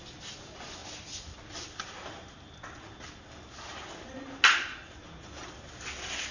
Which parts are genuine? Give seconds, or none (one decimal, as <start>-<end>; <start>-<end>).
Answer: 0.0-6.3